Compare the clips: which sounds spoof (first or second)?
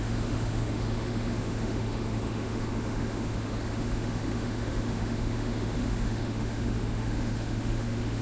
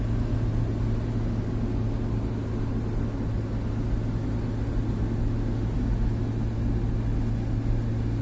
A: first